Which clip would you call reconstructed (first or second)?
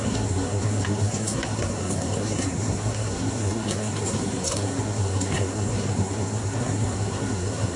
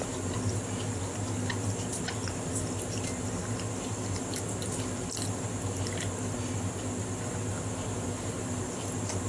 first